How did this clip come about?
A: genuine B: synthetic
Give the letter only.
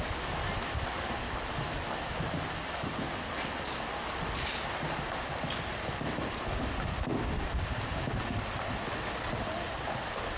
A